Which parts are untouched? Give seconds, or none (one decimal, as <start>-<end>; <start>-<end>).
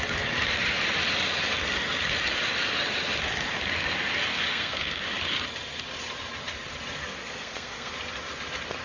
0.0-4.3; 5.0-7.0; 7.9-8.8